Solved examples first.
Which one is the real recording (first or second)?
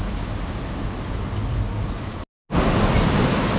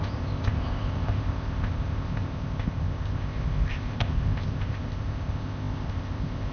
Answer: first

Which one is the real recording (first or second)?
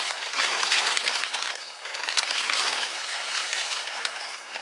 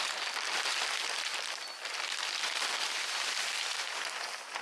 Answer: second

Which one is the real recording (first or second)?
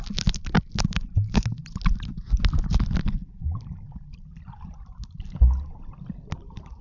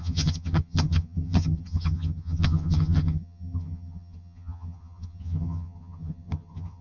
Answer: first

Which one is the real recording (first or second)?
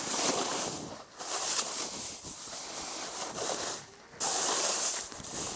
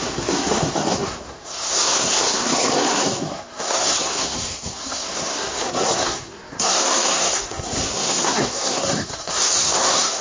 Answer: first